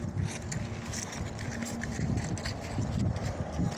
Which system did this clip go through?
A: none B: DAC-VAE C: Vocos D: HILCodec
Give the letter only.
A